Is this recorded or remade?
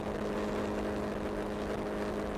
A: recorded